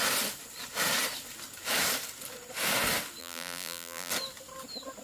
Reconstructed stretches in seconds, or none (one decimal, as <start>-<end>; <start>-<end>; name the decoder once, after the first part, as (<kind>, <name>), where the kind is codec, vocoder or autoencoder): 3.2-4.1 (vocoder, BigVGAN v2)